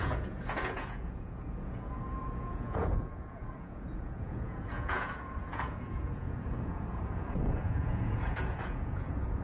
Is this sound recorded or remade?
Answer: remade